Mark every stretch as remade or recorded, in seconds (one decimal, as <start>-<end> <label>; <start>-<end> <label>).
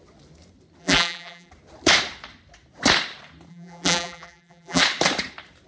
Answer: 0.0-0.8 recorded; 0.8-1.5 remade; 1.5-3.5 recorded; 3.5-4.8 remade; 4.8-5.7 recorded